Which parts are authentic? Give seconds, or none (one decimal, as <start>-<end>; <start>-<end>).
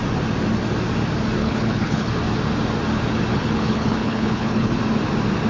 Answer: 0.0-1.4; 2.1-3.3; 4.8-5.5